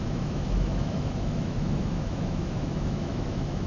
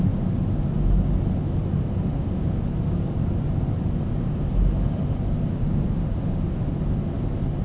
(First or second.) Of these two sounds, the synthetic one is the first